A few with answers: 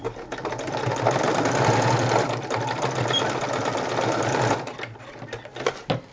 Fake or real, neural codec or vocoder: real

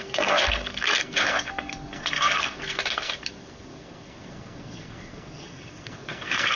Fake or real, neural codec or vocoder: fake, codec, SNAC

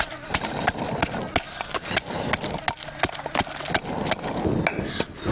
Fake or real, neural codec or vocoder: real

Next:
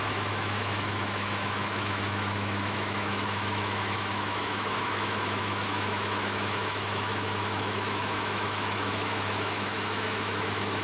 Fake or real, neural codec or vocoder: fake, autoencoder, DAC-VAE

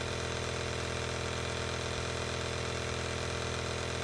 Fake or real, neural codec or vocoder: real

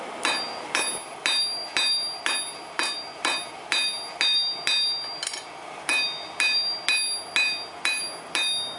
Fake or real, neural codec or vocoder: real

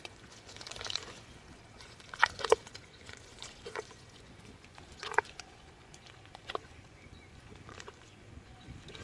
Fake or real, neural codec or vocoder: fake, vocoder, Vocos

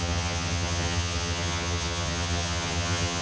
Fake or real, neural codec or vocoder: fake, vocoder, HiFi-GAN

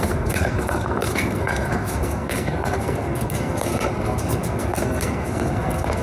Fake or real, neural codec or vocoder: fake, codec, SNAC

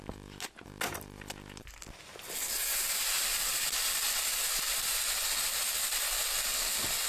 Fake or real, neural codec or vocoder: real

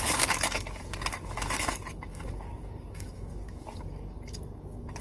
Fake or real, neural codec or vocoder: fake, codec, DAC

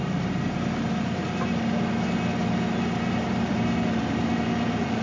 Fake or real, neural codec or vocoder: real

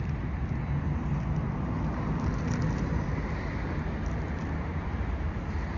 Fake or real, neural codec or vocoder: real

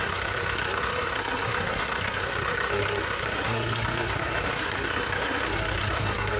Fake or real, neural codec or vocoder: fake, codec, SNAC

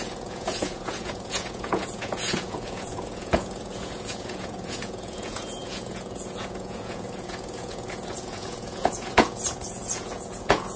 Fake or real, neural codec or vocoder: fake, vocoder, Vocos